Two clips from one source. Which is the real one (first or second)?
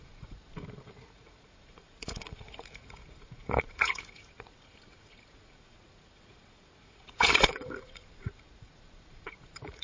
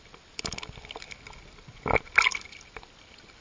second